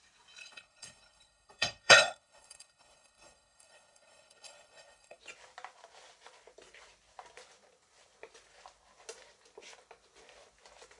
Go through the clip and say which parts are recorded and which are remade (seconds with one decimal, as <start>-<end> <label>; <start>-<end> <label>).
0.0-0.4 recorded; 0.4-5.2 remade; 5.2-11.0 recorded